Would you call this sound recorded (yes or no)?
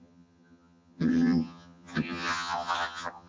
no